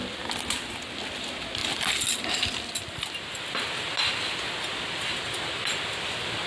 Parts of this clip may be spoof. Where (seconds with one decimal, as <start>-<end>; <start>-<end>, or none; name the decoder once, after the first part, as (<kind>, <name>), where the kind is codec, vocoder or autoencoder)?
none